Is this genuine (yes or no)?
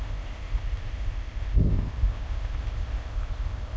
no